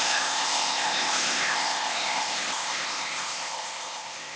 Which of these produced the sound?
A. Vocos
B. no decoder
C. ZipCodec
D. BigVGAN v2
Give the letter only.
C